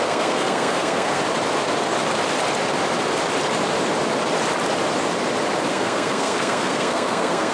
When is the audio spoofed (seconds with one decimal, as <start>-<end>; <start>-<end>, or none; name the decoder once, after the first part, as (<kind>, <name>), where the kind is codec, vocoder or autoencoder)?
0.0-1.2 (codec, SNAC); 5.7-7.5